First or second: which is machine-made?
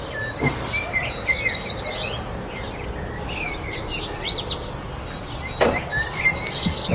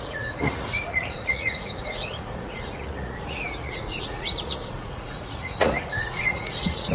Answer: second